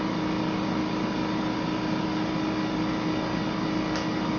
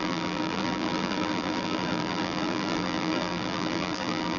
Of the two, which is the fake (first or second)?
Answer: second